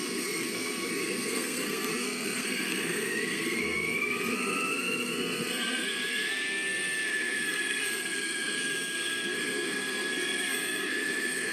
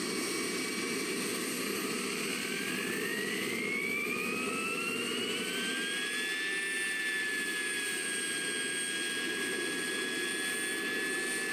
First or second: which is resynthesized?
first